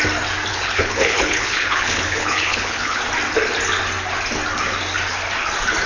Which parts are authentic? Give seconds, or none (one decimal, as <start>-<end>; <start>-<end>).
0.0-0.5; 3.0-5.9